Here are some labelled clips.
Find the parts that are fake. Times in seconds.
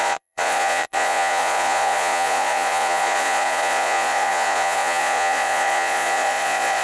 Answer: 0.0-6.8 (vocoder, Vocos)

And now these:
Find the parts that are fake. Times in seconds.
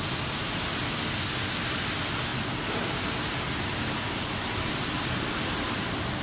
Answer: none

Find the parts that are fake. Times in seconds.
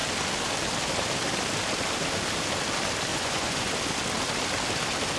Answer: 3.1-3.7 (vocoder, Vocos)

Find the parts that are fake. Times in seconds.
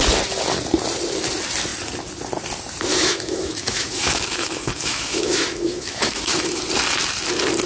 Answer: 2.9-6.6 (autoencoder, DAC-VAE)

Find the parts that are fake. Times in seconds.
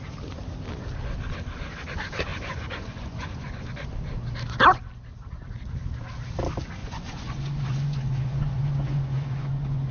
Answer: 2.3-3.7 (vocoder, Vocos); 6.8-9.9